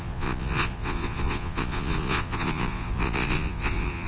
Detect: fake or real fake